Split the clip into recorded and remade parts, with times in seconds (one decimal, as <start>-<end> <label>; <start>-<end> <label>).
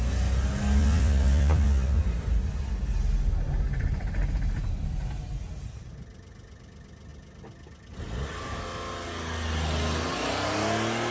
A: 0.0-0.8 recorded; 0.8-2.0 remade; 2.0-11.1 recorded